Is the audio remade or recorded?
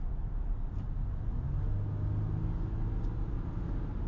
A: recorded